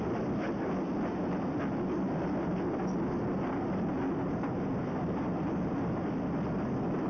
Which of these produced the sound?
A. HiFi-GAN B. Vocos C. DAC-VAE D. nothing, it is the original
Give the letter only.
D